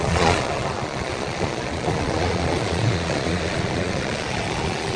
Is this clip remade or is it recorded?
remade